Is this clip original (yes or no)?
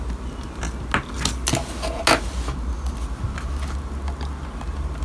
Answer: yes